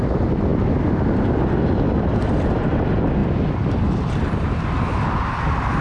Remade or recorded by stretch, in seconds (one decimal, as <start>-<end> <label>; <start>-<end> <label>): 0.0-3.2 recorded; 3.2-5.8 remade

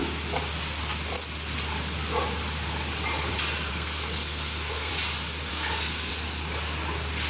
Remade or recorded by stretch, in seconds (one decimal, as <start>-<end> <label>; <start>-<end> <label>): 0.0-3.7 recorded; 3.7-4.9 remade; 4.9-5.5 recorded; 5.5-6.1 remade; 6.1-7.3 recorded

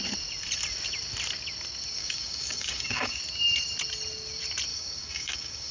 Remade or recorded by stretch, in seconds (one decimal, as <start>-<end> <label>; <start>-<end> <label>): 0.0-2.0 recorded; 2.0-3.2 remade; 3.2-4.7 recorded; 4.7-5.7 remade

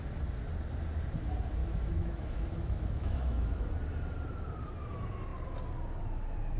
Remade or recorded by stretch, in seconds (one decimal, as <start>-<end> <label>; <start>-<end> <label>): 0.0-1.6 recorded; 1.6-3.7 remade; 3.7-6.6 recorded

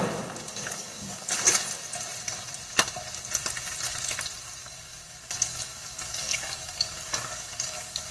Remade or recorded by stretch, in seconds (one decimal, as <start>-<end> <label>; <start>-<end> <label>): 0.0-0.5 recorded; 0.5-1.3 remade; 1.3-4.6 recorded; 4.6-8.1 remade

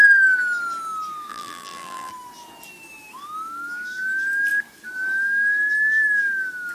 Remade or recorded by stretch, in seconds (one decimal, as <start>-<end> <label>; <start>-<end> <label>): 0.0-1.3 recorded; 1.3-2.1 remade; 2.1-6.7 recorded

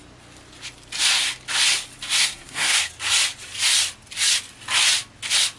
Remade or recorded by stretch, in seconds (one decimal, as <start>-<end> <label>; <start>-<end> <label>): 0.0-2.2 recorded; 2.2-2.9 remade; 2.9-5.6 recorded